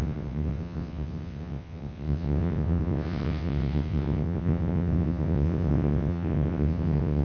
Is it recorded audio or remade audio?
remade